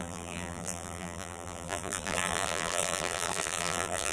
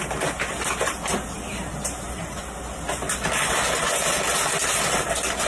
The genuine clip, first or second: second